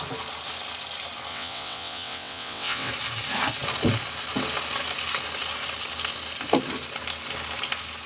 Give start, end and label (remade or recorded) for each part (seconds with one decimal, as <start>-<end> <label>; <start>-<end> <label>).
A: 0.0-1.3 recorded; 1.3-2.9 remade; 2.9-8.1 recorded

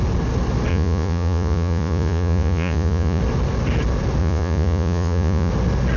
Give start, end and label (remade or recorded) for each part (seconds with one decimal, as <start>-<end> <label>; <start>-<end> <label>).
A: 0.0-0.7 recorded; 0.7-3.2 remade; 3.2-4.2 recorded; 4.2-5.5 remade; 5.5-6.0 recorded

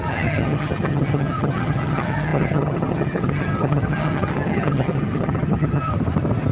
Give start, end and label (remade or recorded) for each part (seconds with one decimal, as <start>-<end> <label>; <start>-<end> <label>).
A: 0.0-5.9 remade; 5.9-6.5 recorded

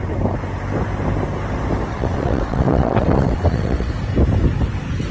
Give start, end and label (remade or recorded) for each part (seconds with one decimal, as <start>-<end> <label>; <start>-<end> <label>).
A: 0.0-1.9 recorded; 1.9-3.9 remade; 3.9-5.1 recorded

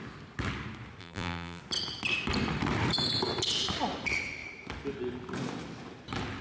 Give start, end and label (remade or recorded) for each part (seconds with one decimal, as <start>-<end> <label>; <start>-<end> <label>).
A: 0.0-1.0 recorded; 1.0-1.6 remade; 1.6-6.4 recorded

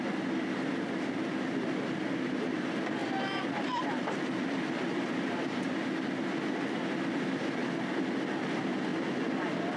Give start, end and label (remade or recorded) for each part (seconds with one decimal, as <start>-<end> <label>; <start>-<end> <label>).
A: 0.0-3.0 recorded; 3.0-5.0 remade; 5.0-8.9 recorded; 8.9-9.8 remade

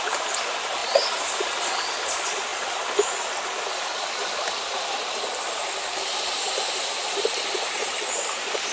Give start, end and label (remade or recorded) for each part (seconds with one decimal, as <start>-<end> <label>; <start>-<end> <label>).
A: 0.0-8.7 recorded